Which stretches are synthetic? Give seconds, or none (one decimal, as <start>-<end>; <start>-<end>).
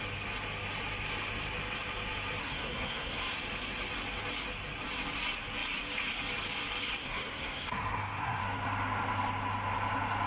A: 2.4-3.3; 7.0-8.4